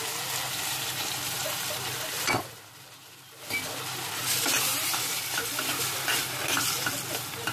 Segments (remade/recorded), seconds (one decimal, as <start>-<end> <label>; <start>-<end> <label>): 0.0-1.4 recorded; 1.4-2.4 remade; 2.4-7.5 recorded